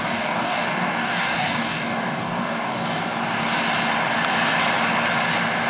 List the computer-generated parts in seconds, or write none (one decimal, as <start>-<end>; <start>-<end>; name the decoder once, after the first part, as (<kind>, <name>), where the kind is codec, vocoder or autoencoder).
0.0-3.0 (codec, DAC)